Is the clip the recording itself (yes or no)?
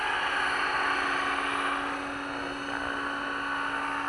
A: yes